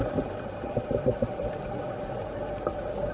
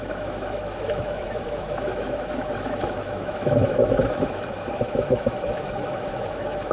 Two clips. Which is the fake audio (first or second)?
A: second